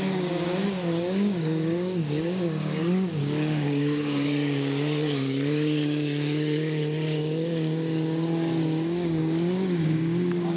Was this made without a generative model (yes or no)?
no